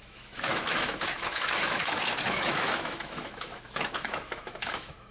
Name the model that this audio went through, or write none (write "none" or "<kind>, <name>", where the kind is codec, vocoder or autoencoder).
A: autoencoder, DAC-VAE